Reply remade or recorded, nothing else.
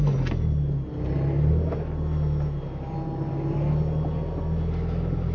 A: recorded